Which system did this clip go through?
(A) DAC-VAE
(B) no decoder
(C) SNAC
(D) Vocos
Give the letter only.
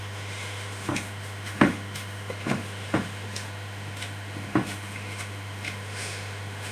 A